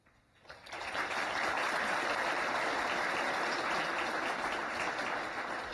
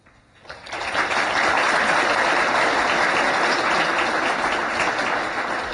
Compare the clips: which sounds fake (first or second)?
first